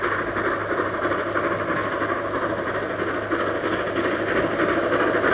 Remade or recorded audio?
recorded